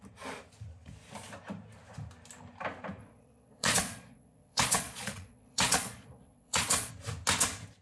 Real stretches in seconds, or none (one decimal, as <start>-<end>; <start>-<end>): 0.0-3.0; 6.9-7.8